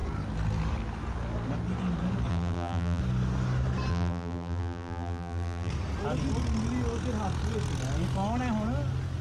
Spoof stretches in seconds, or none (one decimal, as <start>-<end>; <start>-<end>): 2.3-3.0; 3.9-5.7